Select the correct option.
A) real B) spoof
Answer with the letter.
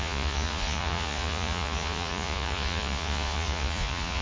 B